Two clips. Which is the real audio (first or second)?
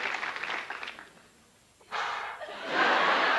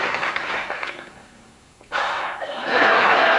first